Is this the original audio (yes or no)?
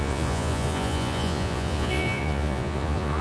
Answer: no